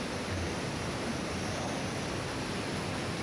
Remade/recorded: recorded